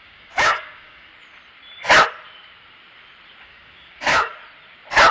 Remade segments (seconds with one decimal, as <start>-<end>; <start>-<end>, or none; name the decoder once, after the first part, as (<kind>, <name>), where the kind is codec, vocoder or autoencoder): 0.0-1.1 (codec, DAC); 3.4-4.3